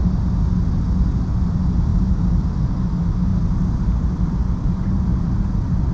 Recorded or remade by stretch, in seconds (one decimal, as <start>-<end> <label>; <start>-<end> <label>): 0.0-5.9 recorded